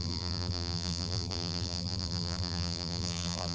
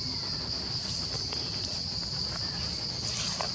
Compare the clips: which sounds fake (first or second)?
first